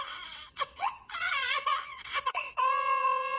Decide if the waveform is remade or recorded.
remade